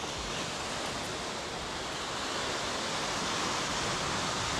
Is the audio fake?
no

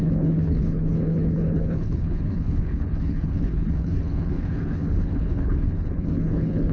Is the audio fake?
yes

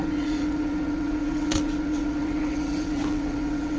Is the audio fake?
yes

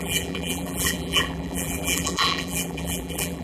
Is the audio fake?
yes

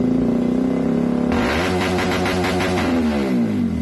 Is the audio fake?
no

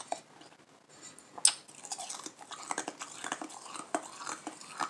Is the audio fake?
no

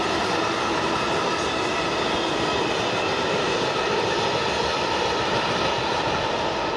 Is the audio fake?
no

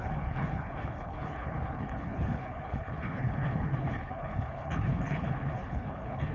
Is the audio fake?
yes